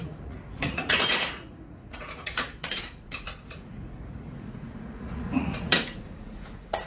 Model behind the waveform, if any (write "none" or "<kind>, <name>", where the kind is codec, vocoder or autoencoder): vocoder, Vocos